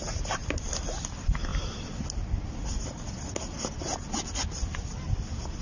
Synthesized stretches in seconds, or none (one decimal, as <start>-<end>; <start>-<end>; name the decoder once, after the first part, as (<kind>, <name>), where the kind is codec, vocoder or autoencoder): none